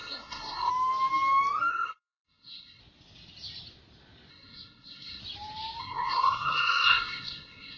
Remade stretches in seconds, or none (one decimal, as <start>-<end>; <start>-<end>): 0.0-0.7; 1.7-2.8; 4.3-5.2; 5.8-7.8